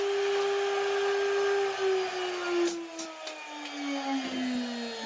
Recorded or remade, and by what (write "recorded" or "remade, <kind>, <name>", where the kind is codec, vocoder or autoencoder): recorded